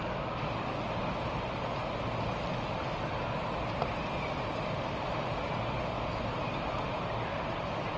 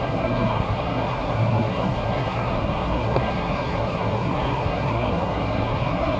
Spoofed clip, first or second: second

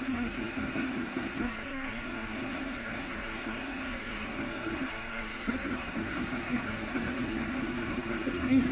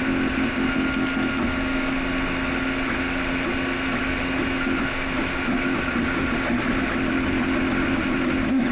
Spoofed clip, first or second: first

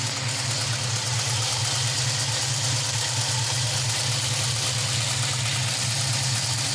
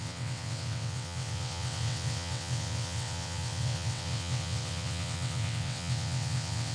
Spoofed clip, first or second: second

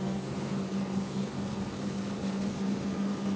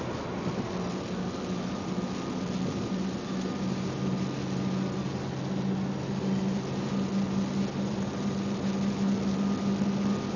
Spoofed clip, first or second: first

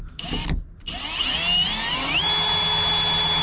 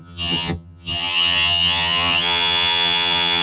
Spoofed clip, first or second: second